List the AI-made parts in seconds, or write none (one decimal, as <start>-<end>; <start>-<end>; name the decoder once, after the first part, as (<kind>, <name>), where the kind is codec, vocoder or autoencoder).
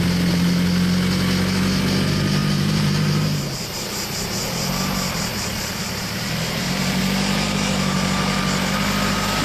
2.4-4.7 (vocoder, BigVGAN v2); 5.3-7.0